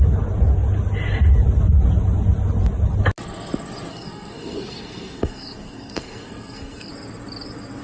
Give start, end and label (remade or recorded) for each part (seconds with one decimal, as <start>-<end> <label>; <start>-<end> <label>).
0.0-3.9 recorded; 3.9-6.9 remade; 6.9-7.8 recorded